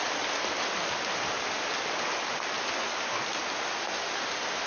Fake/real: real